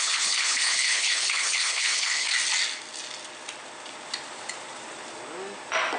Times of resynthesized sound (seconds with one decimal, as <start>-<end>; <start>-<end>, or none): 0.0-2.3

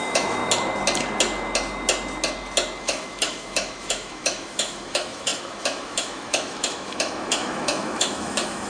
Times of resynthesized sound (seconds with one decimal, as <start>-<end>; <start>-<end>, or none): 0.0-0.4; 2.8-8.7

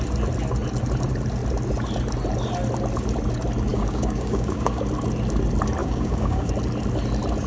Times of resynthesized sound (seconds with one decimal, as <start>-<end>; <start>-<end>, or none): 3.7-4.8; 5.8-6.5

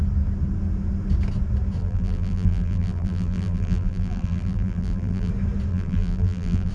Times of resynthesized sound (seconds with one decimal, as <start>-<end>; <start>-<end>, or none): 1.8-5.3; 5.7-6.7